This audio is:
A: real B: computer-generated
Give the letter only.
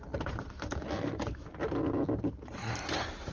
A